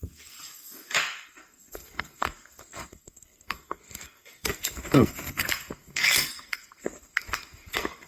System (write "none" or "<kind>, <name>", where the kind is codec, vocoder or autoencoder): codec, SNAC